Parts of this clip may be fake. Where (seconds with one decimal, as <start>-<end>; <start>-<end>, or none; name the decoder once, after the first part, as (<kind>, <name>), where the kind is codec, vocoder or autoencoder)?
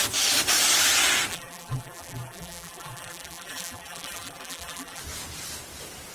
1.3-5.0 (vocoder, BigVGAN v2)